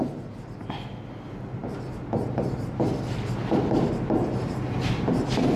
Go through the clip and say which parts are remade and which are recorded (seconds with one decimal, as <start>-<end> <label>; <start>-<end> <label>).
0.0-5.6 recorded